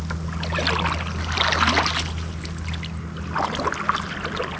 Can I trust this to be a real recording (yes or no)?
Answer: yes